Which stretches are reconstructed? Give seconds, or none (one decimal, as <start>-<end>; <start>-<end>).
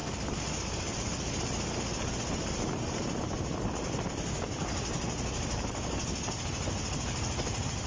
none